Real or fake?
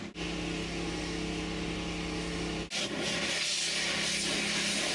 real